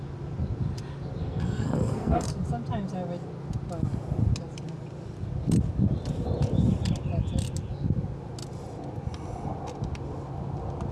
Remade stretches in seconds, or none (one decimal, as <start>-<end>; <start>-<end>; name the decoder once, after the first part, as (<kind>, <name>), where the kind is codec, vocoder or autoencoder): 1.2-2.3 (codec, SNAC)